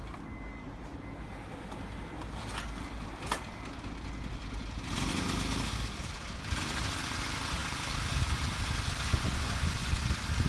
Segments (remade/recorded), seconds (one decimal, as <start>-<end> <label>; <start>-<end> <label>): 0.0-9.1 recorded; 9.1-10.0 remade; 10.0-10.5 recorded